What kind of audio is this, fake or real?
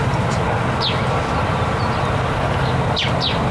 real